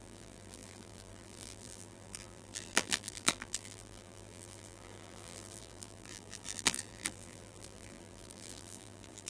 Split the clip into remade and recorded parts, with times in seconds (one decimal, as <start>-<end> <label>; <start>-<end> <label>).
0.0-9.3 remade